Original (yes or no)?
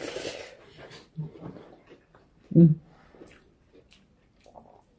yes